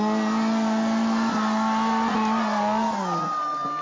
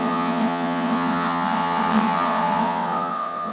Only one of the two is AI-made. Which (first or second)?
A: second